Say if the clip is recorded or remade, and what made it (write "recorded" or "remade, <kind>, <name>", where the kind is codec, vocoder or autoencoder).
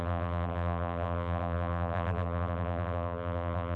remade, vocoder, BigVGAN v2